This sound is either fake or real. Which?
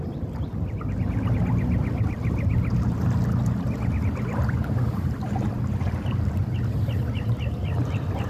real